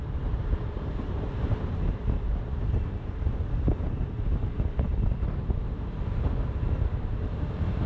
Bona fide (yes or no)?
no